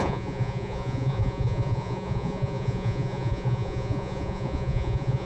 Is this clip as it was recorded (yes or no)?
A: no